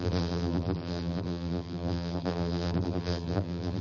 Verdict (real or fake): fake